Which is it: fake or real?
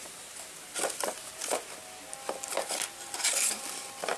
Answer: real